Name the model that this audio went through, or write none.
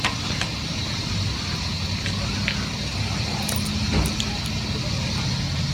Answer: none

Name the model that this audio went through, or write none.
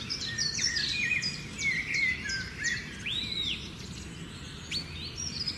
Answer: none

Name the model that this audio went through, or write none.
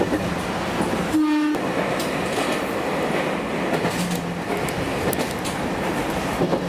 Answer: none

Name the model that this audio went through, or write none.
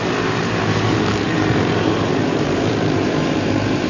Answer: vocoder, BigVGAN v2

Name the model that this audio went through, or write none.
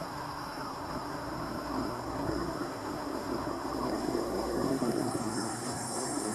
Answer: codec, SNAC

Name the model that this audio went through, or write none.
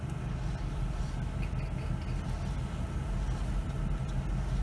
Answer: none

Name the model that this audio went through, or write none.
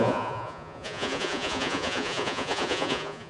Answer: vocoder, Vocos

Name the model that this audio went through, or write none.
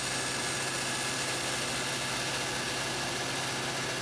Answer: none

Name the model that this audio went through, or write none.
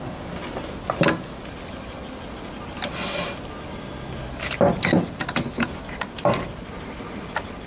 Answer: none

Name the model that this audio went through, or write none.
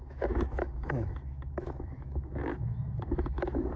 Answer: autoencoder, DAC-VAE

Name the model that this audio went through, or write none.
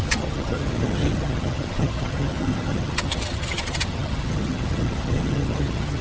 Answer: vocoder, HiFi-GAN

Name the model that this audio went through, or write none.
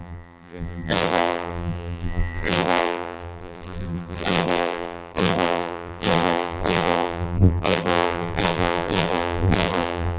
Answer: vocoder, BigVGAN v2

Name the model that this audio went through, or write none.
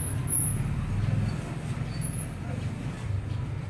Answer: none